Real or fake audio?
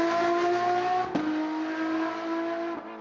real